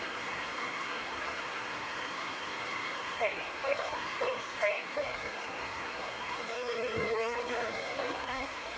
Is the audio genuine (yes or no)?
no